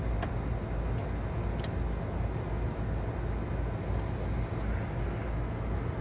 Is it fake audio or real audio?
real